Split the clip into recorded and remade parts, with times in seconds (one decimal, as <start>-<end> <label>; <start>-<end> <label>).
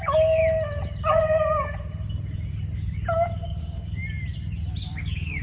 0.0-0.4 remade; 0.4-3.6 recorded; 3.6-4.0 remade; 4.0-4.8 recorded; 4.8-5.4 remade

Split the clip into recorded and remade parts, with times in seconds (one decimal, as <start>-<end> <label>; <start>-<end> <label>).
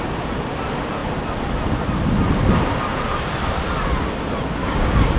0.0-4.6 recorded; 4.6-5.2 remade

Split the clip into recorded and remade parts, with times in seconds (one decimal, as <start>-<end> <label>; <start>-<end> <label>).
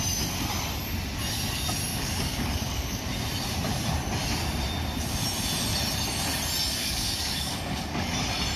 0.0-1.9 recorded; 1.9-3.0 remade; 3.0-6.8 recorded; 6.8-8.1 remade; 8.1-8.6 recorded